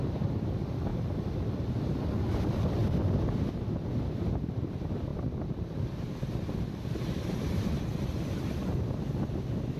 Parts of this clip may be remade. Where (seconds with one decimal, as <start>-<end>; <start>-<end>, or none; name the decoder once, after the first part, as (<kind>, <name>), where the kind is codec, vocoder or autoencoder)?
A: none